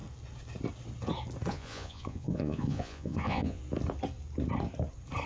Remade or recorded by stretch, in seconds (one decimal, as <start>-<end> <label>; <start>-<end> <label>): 0.0-1.5 recorded; 1.5-3.6 remade; 3.6-5.3 recorded